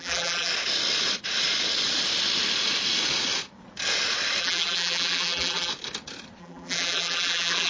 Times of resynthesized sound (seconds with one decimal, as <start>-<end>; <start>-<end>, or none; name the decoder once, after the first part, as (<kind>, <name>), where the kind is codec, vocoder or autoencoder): 0.0-0.5 (vocoder, BigVGAN v2); 4.4-5.7; 6.4-7.7